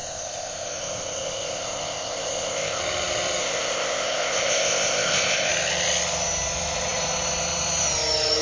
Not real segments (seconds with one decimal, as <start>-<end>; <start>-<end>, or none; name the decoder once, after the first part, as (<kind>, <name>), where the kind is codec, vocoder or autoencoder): 0.0-2.8 (codec, ZipCodec); 3.4-5.5